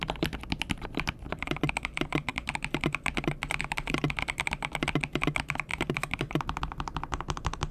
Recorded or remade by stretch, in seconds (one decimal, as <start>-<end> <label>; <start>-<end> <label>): 0.0-5.7 recorded; 5.7-6.6 remade; 6.6-7.7 recorded